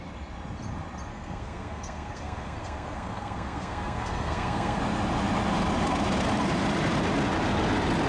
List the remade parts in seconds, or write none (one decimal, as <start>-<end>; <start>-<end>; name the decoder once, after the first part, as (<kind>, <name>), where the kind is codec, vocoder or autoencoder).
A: 1.1-4.8 (codec, SNAC)